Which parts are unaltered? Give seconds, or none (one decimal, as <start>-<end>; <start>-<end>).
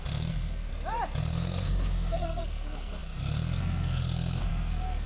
0.7-1.2